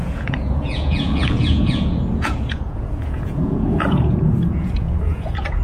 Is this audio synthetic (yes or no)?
yes